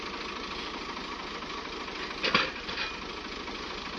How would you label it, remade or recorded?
recorded